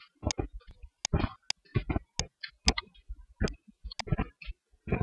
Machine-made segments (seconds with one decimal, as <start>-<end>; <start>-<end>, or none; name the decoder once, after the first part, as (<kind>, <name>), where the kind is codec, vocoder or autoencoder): none